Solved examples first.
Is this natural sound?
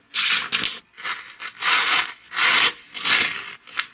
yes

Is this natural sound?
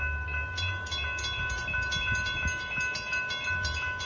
yes